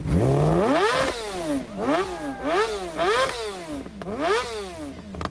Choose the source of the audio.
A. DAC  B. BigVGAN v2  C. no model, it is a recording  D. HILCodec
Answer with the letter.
C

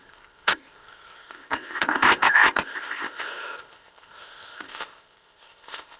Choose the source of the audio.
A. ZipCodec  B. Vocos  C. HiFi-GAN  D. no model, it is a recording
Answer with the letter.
A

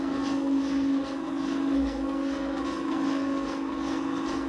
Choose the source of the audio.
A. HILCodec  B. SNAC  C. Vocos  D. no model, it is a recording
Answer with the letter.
B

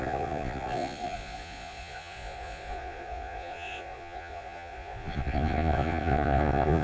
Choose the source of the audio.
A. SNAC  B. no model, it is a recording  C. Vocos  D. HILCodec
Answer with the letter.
C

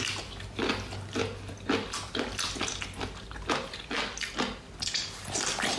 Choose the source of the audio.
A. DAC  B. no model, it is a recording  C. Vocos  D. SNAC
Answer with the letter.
B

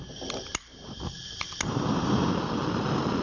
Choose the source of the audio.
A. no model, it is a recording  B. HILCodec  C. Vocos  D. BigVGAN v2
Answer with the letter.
D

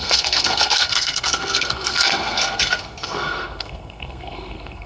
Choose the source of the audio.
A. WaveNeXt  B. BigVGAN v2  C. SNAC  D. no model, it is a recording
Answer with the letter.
C